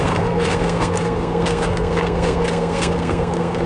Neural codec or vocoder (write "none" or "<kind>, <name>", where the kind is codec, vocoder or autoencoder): codec, SNAC